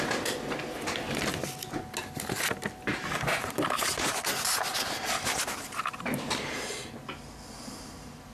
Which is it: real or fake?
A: real